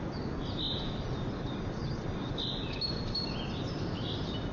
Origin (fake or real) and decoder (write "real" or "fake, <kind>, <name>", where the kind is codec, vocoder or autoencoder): real